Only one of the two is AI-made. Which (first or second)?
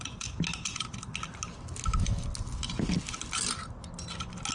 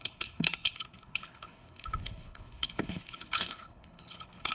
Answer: second